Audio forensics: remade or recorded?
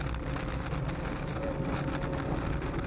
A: recorded